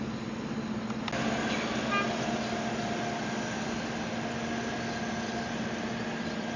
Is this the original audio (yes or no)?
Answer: yes